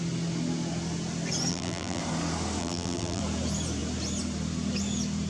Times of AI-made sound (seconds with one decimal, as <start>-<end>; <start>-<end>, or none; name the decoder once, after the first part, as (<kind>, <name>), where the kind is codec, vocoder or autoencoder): 1.5-2.0 (vocoder, BigVGAN v2); 2.6-3.2